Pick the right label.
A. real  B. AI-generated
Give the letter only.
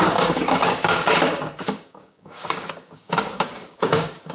B